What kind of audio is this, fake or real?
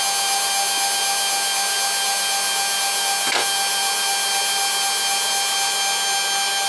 real